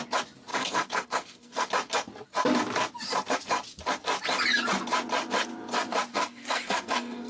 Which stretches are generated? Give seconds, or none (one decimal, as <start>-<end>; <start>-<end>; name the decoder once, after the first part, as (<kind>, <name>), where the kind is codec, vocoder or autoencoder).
0.5-1.7 (codec, SNAC); 6.1-7.3